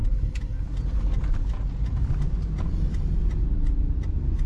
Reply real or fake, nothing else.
real